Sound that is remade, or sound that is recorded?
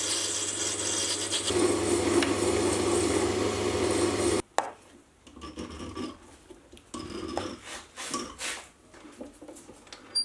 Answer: recorded